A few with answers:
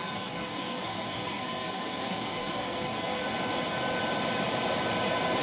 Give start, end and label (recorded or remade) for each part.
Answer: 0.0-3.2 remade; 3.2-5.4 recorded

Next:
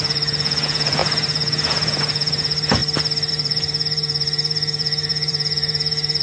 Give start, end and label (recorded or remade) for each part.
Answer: 0.0-2.8 remade; 2.8-3.3 recorded; 3.3-6.2 remade

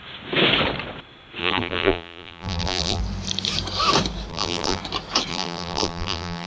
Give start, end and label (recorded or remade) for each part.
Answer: 0.0-1.4 recorded; 1.4-3.0 remade; 3.0-4.3 recorded; 4.3-4.8 remade; 4.8-5.3 recorded; 5.3-6.5 remade